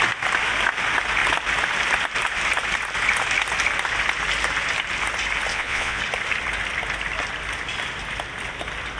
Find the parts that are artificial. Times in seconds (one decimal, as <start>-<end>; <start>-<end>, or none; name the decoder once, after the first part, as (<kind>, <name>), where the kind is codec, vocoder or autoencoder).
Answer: 5.5-6.0 (vocoder, Vocos)